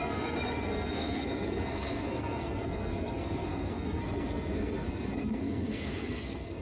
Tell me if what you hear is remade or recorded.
remade